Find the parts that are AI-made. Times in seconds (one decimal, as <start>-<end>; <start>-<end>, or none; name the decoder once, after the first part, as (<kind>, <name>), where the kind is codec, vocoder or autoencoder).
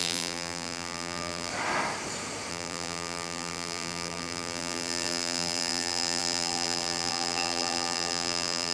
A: 0.0-1.5 (vocoder, BigVGAN v2); 2.5-8.7